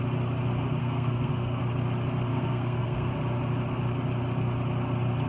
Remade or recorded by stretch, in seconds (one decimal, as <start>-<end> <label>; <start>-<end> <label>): 0.0-0.8 recorded; 0.8-1.6 remade; 1.6-2.3 recorded; 2.3-3.1 remade; 3.1-5.3 recorded